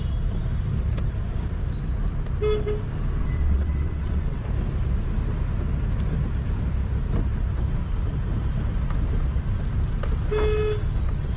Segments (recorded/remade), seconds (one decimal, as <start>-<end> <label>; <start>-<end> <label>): 0.0-3.2 recorded; 3.2-4.4 remade; 4.4-11.4 recorded